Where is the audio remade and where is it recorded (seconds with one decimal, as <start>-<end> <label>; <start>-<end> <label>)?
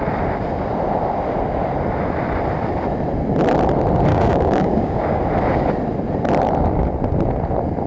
0.0-4.1 recorded; 4.1-5.2 remade; 5.2-7.9 recorded